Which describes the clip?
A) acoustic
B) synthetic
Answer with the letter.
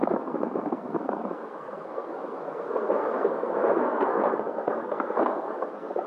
B